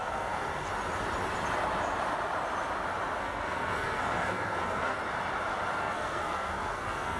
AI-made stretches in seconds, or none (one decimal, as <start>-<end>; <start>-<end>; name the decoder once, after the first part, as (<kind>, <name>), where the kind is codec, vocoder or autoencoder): 0.0-0.7 (codec, SNAC); 3.2-5.0; 5.8-7.2